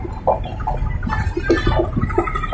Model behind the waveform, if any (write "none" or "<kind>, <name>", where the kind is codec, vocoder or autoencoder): none